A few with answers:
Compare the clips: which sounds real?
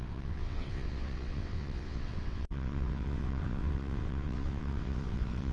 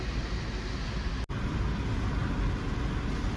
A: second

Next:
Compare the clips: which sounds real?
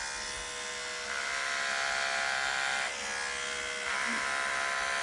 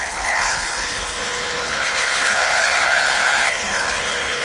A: first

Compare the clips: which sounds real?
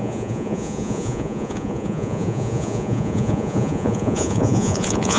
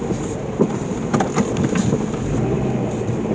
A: second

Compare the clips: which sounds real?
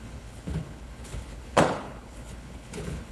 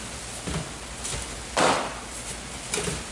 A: second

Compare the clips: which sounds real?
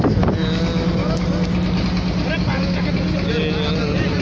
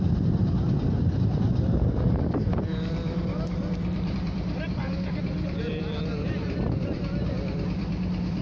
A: first